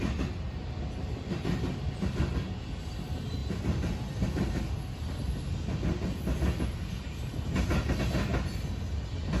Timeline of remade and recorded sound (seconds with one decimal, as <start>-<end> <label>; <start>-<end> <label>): 0.0-9.4 recorded